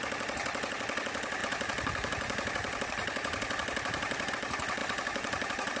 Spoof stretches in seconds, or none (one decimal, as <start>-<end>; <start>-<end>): 1.4-4.3; 4.8-5.8